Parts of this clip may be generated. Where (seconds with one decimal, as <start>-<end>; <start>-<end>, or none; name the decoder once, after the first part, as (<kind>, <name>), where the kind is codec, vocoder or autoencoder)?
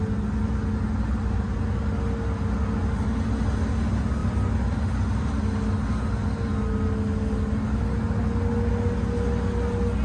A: none